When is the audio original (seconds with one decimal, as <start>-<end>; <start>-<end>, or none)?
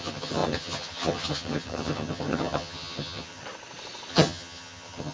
3.4-4.1